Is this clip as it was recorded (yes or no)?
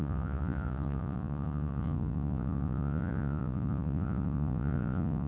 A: no